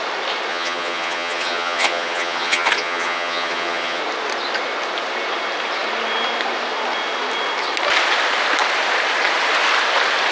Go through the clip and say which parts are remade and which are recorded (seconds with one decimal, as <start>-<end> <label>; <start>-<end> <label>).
0.0-0.5 recorded; 0.5-4.0 remade; 4.0-10.3 recorded